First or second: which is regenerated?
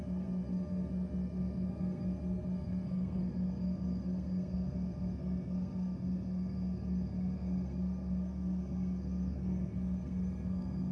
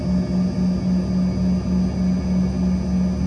first